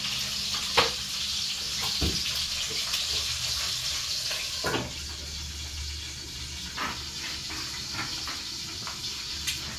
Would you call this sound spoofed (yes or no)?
no